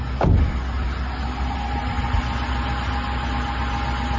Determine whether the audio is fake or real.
real